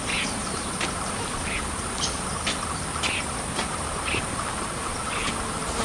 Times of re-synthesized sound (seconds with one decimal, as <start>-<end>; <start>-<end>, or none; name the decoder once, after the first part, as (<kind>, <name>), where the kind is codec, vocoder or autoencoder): 4.5-5.3 (vocoder, BigVGAN v2)